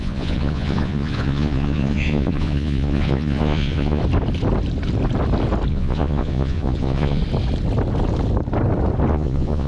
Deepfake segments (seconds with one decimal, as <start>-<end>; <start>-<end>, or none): 0.0-4.0; 5.7-7.2; 9.1-9.7